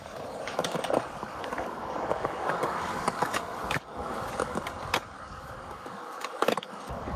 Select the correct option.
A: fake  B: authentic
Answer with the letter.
A